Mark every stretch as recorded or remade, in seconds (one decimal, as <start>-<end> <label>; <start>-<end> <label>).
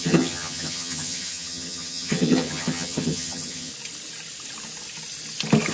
0.0-3.7 remade; 3.7-5.7 recorded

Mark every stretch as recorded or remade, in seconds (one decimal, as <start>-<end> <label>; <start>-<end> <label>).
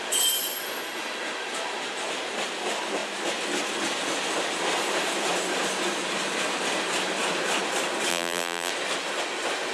0.0-8.1 recorded; 8.1-8.7 remade; 8.7-9.7 recorded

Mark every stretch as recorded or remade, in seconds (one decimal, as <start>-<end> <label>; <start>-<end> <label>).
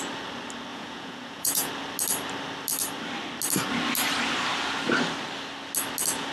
0.0-0.7 recorded; 0.7-1.7 remade; 1.7-6.3 recorded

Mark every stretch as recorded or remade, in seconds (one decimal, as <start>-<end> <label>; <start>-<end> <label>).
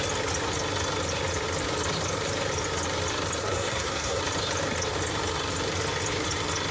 0.0-3.4 recorded; 3.4-4.2 remade; 4.2-6.7 recorded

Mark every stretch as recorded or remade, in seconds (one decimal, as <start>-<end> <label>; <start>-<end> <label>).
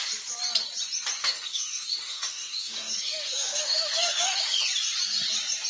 0.0-1.2 recorded; 1.2-4.6 remade; 4.6-5.7 recorded